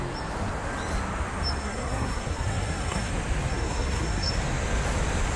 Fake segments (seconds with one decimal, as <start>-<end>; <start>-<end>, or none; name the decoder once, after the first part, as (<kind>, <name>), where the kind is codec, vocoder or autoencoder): 1.6-3.1 (codec, SNAC); 3.5-4.3